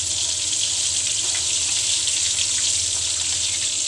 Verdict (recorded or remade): recorded